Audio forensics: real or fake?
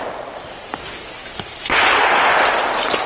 fake